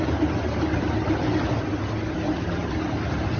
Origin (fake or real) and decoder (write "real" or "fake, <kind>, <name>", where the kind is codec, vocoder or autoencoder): real